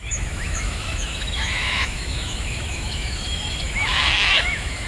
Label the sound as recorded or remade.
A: remade